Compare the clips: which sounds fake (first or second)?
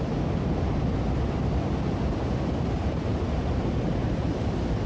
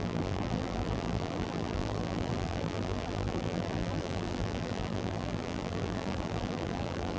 second